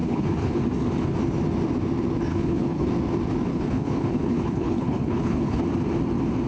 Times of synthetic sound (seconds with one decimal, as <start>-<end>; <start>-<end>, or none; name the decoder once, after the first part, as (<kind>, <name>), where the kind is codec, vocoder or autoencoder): 0.0-0.6 (codec, HILCodec); 2.3-2.9; 3.5-5.6